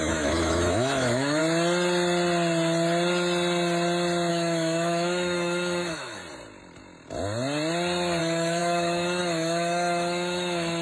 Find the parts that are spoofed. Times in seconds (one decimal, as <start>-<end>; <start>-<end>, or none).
0.0-1.4; 4.3-6.2; 8.2-10.8